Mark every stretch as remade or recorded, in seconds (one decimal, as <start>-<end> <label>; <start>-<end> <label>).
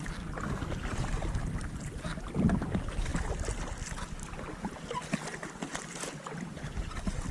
0.0-7.3 recorded